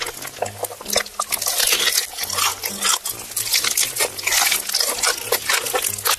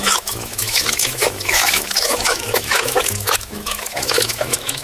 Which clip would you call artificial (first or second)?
second